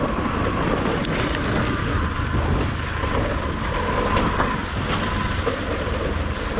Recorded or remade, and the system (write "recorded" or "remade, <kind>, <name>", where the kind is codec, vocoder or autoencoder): recorded